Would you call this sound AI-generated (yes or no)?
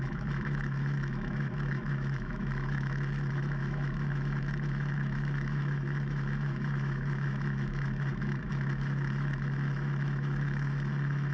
yes